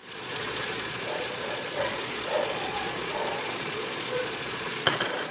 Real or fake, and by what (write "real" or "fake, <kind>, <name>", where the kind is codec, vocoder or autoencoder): fake, vocoder, Vocos